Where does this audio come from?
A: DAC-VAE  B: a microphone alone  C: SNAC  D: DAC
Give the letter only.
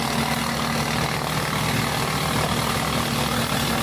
B